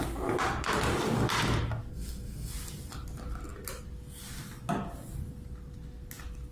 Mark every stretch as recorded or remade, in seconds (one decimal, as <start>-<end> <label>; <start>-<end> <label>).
0.0-1.9 recorded; 1.9-2.5 remade; 2.5-6.5 recorded